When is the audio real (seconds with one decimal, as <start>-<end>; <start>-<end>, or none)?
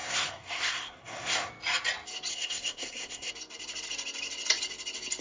1.5-2.3; 3.3-5.2